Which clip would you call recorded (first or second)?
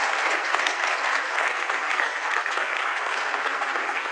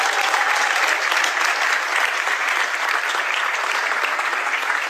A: second